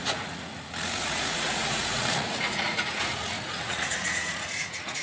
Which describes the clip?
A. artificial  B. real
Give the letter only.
A